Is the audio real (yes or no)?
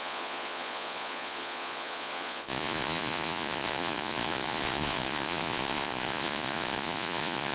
no